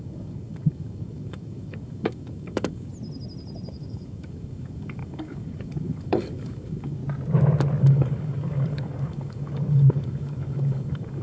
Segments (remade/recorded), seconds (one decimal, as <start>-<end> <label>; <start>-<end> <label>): 0.0-2.9 remade; 2.9-3.7 recorded; 3.7-7.0 remade; 7.0-7.8 recorded; 7.8-11.2 remade